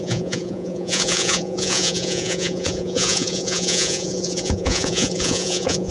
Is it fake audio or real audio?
fake